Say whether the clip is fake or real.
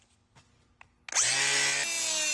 real